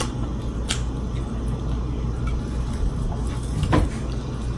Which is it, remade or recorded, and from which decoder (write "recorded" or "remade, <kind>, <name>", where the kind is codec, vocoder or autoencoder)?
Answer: recorded